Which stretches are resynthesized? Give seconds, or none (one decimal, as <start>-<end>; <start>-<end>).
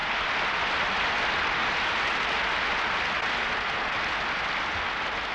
none